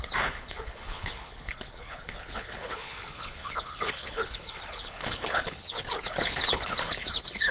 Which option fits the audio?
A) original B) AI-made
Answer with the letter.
B